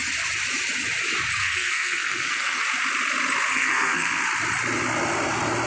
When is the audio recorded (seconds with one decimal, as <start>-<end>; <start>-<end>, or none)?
0.0-1.4; 2.6-3.5; 4.2-5.7